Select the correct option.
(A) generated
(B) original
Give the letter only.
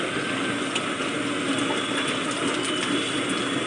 B